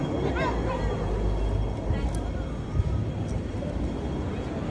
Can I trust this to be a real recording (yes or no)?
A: yes